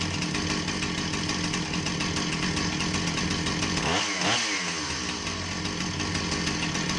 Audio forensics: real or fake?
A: real